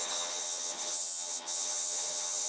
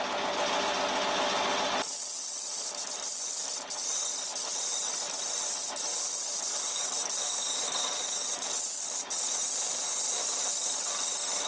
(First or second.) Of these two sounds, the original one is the second